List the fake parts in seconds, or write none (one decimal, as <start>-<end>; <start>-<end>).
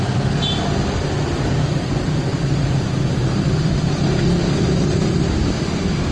2.3-4.8